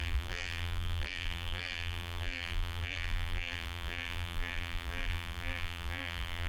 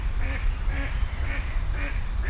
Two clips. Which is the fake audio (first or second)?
first